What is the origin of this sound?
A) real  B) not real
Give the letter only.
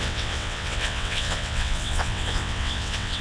B